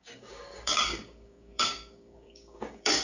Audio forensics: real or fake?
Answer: fake